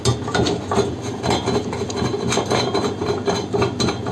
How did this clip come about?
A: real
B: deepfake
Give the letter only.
A